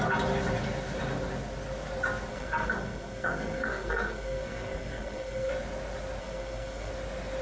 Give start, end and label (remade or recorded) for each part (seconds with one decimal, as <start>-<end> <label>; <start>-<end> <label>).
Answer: 0.0-2.3 recorded; 2.3-5.5 remade; 5.5-6.2 recorded; 6.2-6.9 remade; 6.9-7.4 recorded